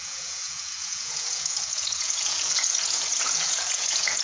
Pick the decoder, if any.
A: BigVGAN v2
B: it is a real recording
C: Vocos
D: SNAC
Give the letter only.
C